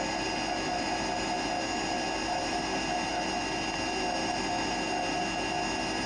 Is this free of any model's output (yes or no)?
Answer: yes